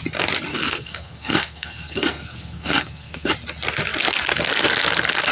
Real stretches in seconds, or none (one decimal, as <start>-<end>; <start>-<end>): 0.0-0.5; 3.3-5.3